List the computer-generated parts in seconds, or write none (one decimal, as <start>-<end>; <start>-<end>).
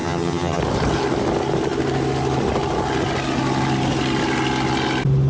0.0-0.6